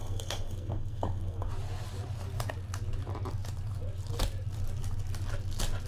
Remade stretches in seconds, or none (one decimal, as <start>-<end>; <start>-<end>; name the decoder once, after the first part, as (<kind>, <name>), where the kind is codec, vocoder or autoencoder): 0.0-1.5 (codec, SNAC)